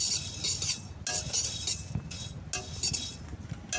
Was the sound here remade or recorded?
recorded